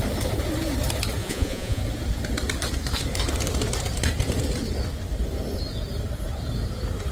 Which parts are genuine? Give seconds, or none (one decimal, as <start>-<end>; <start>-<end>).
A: 0.0-1.2; 1.8-7.1